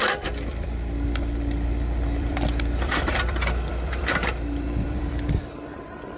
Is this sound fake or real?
fake